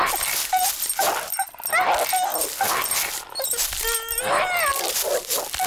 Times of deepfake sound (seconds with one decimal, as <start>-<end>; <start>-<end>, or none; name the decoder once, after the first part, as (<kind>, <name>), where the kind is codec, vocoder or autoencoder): none